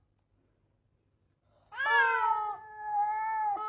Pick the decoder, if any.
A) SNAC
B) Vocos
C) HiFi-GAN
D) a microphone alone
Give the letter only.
D